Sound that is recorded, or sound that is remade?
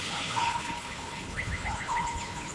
remade